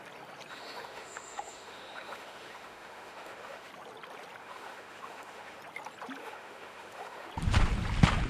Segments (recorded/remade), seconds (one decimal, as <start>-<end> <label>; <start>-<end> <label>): 0.0-0.5 recorded; 0.5-3.7 remade; 3.7-4.4 recorded; 4.4-5.6 remade; 5.6-6.2 recorded; 6.2-7.3 remade; 7.3-8.3 recorded